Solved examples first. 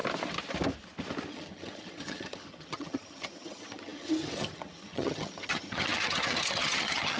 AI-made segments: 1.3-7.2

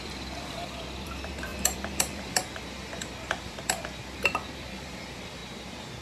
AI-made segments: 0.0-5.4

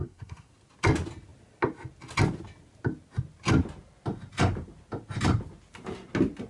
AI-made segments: 0.0-0.5

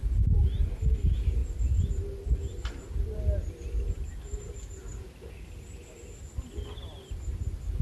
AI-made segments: none